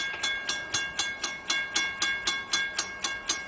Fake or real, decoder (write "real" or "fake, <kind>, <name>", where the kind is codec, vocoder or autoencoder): real